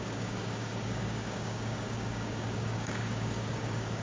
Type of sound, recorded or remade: remade